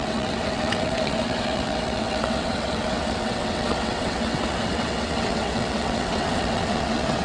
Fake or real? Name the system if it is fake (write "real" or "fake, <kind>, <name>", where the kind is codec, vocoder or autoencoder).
fake, vocoder, WaveNeXt